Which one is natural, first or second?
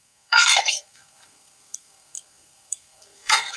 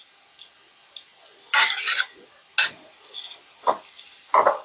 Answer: second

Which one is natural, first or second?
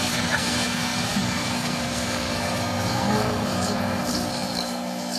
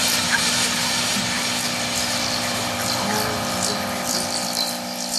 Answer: second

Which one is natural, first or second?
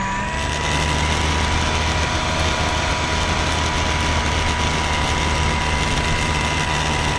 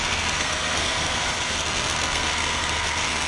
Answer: first